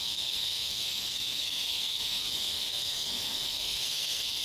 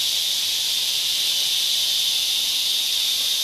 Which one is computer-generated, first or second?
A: first